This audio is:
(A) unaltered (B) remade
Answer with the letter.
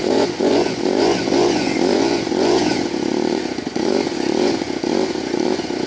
B